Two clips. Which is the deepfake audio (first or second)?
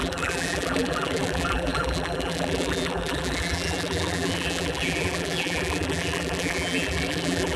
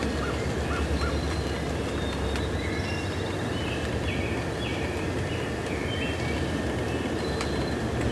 first